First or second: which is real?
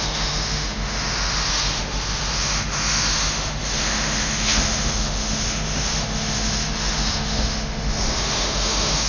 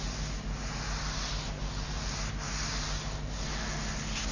second